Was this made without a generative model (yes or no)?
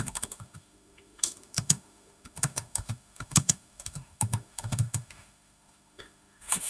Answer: no